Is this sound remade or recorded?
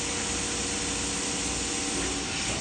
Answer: recorded